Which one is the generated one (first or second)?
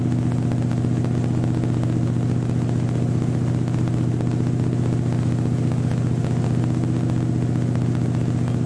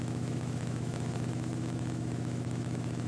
second